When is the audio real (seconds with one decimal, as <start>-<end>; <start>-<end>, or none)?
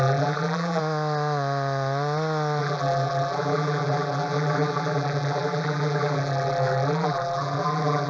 0.8-2.6